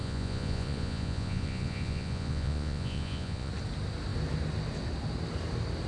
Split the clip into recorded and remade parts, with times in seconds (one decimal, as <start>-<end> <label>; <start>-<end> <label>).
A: 0.0-3.5 remade; 3.5-5.9 recorded